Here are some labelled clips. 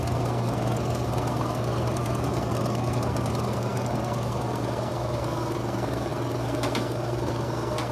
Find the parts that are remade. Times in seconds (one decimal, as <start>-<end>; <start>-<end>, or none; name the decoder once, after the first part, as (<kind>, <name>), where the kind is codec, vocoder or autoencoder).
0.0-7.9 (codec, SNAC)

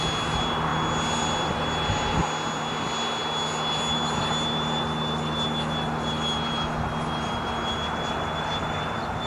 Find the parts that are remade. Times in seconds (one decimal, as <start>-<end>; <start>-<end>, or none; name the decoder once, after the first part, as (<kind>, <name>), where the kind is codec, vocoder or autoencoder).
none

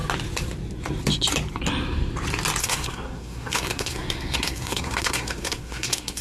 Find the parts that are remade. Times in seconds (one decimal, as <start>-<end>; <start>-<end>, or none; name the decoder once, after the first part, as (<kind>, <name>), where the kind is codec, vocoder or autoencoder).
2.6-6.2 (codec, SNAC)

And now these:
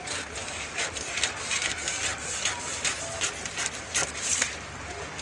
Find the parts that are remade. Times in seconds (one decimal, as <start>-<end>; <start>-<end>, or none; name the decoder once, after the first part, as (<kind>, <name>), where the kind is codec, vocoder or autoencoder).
none

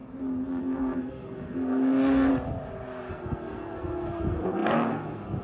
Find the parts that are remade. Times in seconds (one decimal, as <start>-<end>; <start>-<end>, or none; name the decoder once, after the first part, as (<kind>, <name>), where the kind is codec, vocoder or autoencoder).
0.6-2.3 (codec, SNAC); 3.1-5.4

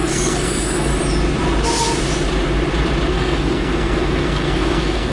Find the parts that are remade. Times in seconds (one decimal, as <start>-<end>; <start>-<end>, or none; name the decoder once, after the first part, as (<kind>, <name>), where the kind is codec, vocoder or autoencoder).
0.0-0.9 (codec, SNAC); 3.1-5.1